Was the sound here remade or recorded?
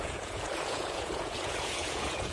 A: remade